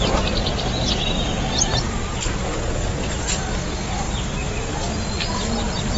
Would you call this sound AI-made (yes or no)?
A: no